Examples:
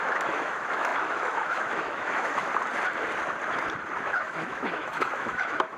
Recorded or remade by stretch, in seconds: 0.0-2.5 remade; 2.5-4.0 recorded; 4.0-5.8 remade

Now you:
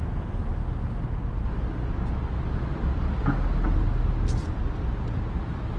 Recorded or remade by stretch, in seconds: 0.0-5.8 recorded